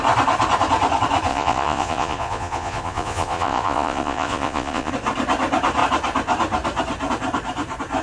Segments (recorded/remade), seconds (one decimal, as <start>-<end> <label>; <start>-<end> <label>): 0.0-1.3 recorded; 1.3-4.9 remade; 4.9-8.0 recorded